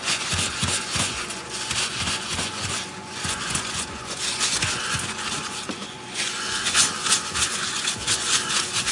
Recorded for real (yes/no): no